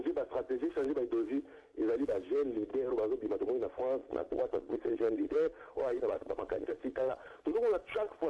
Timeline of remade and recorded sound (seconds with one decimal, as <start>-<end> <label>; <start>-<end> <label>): 0.0-4.0 recorded; 4.0-8.3 remade